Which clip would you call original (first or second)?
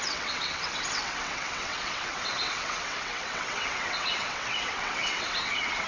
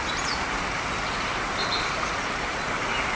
second